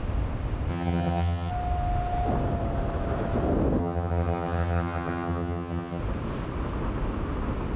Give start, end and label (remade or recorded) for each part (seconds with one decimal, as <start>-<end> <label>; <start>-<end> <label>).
0.0-0.7 recorded; 0.7-1.5 remade; 1.5-3.8 recorded; 3.8-6.0 remade; 6.0-7.8 recorded